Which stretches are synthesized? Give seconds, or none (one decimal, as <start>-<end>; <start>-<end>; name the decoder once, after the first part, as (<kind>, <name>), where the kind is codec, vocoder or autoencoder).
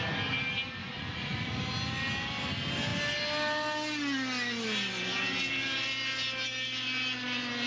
0.8-1.6 (vocoder, Vocos)